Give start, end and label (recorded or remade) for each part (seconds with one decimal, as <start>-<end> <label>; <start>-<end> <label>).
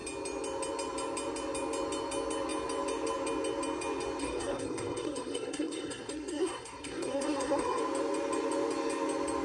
0.0-4.2 recorded; 4.2-7.8 remade; 7.8-9.4 recorded